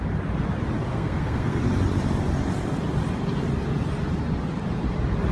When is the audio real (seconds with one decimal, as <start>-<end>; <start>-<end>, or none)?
0.0-0.9; 1.6-5.3